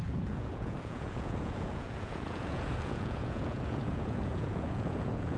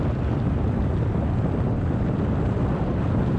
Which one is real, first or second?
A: second